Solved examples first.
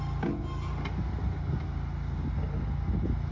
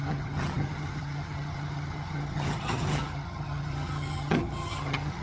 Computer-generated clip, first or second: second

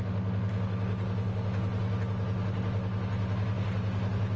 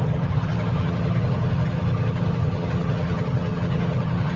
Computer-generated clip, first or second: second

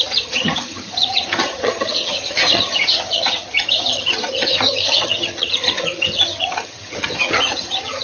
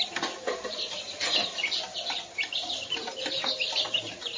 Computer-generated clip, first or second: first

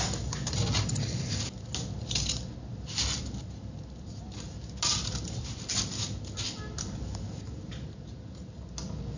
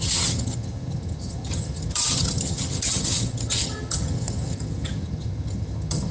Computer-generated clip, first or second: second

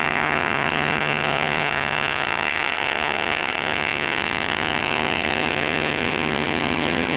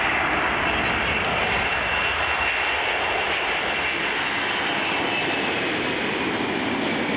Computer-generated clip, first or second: first